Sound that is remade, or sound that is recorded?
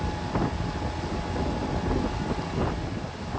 recorded